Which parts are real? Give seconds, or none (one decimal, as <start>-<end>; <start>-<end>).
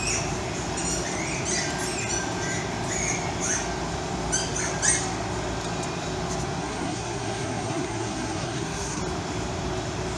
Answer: 0.0-6.6; 9.0-10.2